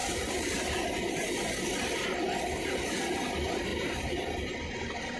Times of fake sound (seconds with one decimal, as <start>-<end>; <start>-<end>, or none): 3.7-4.5